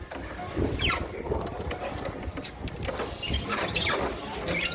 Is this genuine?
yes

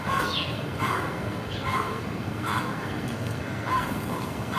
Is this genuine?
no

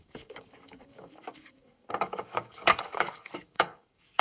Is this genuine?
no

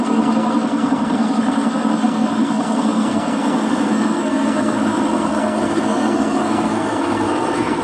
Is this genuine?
no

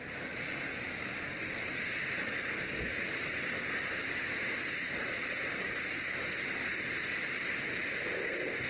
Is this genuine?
yes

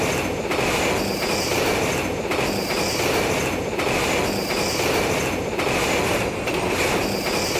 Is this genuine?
yes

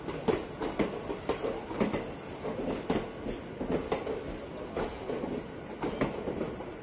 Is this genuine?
yes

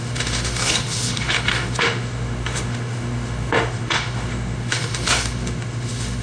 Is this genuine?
no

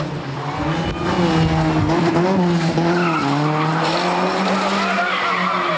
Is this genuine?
yes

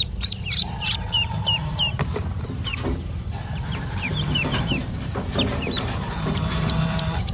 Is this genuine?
no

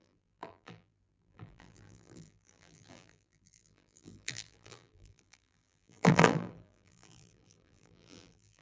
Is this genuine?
no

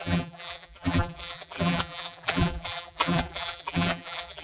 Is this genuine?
no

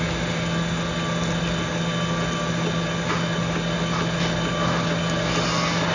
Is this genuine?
yes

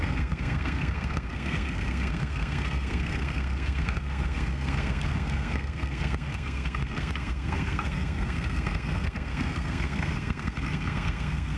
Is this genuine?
no